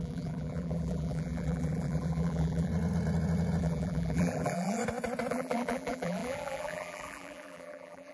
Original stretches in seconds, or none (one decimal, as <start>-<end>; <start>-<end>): 2.7-3.6; 4.8-5.3